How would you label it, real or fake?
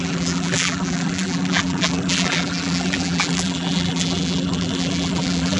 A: fake